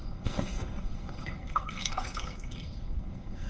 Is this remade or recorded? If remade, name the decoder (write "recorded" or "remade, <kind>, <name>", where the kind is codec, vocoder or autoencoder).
remade, codec, SNAC